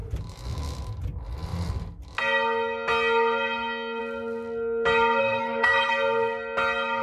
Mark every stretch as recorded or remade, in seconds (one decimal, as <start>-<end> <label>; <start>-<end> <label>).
0.0-5.2 recorded; 5.2-5.9 remade; 5.9-7.0 recorded

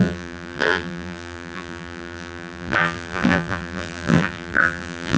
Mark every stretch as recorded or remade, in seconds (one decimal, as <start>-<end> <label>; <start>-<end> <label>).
0.0-5.2 remade

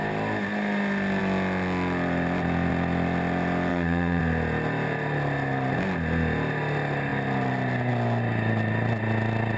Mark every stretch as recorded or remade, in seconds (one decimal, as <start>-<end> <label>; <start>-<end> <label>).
0.0-3.7 recorded; 3.7-4.2 remade; 4.2-9.6 recorded

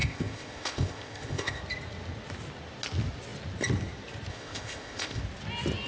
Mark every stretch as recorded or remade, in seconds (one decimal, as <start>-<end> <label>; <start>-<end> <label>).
0.0-1.6 remade; 1.6-4.3 recorded; 4.3-5.2 remade; 5.2-5.9 recorded

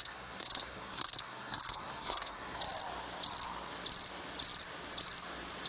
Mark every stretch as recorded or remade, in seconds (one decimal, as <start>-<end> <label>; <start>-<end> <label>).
0.0-2.6 remade; 2.6-5.7 recorded